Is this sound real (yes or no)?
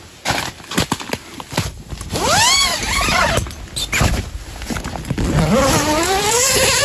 yes